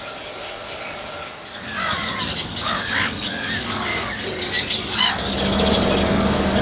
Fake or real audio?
fake